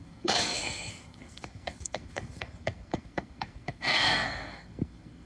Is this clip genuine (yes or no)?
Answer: no